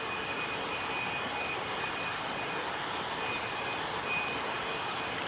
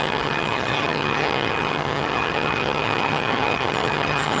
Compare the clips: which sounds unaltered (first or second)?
first